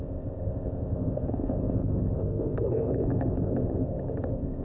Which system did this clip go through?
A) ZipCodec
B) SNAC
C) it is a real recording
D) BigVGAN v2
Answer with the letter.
A